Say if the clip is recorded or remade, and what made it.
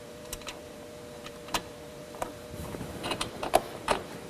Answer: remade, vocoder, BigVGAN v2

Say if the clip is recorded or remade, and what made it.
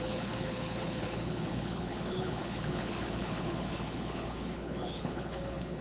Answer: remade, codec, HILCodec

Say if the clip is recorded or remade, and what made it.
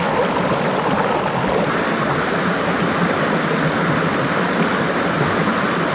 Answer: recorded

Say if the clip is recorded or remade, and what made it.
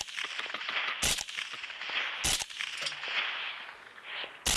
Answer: recorded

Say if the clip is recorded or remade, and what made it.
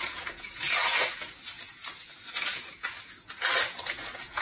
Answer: remade, vocoder, Vocos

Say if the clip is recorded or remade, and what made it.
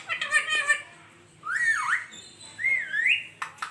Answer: recorded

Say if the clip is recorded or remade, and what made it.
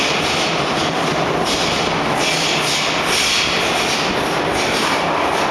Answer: recorded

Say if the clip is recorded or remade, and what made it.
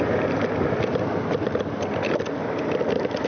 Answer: recorded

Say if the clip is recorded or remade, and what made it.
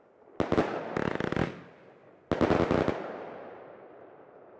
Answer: recorded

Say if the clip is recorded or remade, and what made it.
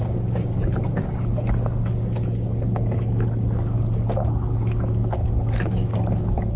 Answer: remade, codec, DAC